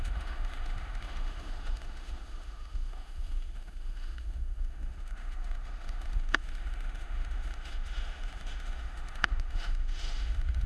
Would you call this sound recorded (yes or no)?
no